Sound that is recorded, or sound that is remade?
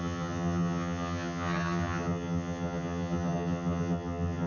remade